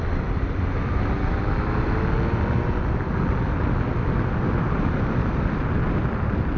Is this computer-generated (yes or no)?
no